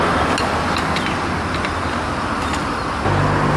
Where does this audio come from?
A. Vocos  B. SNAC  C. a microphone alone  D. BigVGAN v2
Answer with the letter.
C